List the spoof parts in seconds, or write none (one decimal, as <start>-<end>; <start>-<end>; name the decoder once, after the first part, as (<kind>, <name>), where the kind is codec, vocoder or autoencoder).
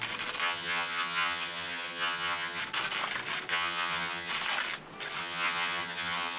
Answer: 0.4-2.6 (vocoder, HiFi-GAN); 3.5-4.3; 5.2-6.4